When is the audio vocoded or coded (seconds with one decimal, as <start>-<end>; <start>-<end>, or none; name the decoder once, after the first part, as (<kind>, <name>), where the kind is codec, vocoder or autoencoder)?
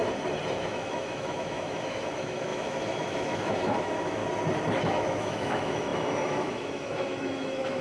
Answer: 0.6-4.2 (autoencoder, DAC-VAE); 4.8-7.8